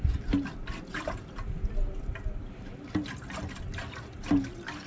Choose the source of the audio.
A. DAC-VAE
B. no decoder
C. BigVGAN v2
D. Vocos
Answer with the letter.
B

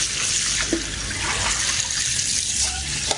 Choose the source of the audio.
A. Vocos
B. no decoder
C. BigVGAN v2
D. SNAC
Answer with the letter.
B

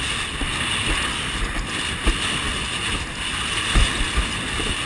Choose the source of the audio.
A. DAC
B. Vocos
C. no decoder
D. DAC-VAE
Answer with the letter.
C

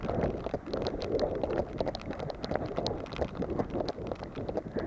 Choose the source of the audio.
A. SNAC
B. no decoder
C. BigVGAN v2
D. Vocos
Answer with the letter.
B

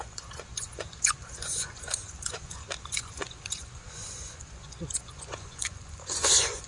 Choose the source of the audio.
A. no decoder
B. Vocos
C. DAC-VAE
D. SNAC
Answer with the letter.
B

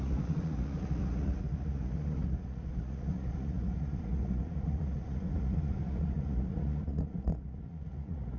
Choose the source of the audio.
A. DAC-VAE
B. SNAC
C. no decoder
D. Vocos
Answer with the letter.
D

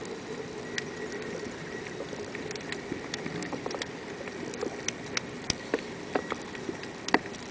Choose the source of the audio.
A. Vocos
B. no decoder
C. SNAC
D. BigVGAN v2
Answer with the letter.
B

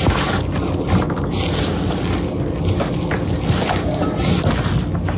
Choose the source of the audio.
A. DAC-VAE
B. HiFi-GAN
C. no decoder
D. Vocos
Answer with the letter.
C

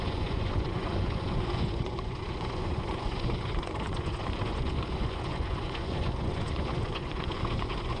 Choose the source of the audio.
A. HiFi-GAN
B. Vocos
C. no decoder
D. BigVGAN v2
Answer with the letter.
B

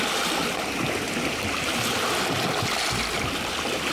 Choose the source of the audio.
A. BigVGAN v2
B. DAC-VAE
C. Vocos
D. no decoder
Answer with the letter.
D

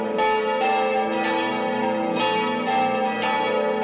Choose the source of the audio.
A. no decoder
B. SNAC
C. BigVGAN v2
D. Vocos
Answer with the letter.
A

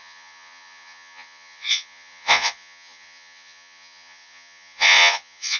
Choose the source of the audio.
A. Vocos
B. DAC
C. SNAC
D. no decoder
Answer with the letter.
A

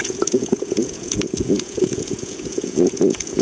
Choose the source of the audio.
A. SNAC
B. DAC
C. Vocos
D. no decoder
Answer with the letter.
C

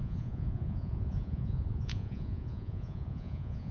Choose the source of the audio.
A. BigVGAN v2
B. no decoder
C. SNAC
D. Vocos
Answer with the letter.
D